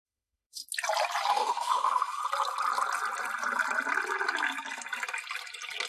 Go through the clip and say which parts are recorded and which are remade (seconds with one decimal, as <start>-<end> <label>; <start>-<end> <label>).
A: 0.0-0.6 remade; 0.6-1.3 recorded; 1.3-2.2 remade; 2.2-5.9 recorded